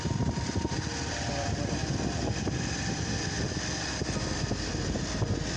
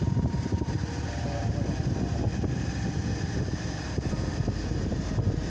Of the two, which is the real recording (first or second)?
first